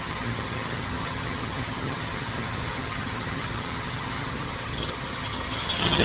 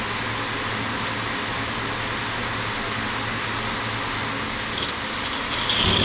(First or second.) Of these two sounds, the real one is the second